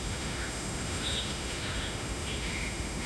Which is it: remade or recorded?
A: remade